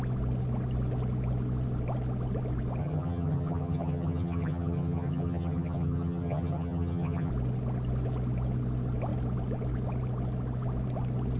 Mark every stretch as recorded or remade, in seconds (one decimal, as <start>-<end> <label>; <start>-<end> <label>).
0.0-2.8 recorded; 2.8-7.3 remade; 7.3-11.4 recorded